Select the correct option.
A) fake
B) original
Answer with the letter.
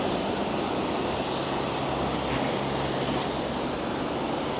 B